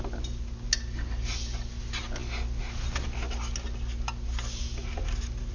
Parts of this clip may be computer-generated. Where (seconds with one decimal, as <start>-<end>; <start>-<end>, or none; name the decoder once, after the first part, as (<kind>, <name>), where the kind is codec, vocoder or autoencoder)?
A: none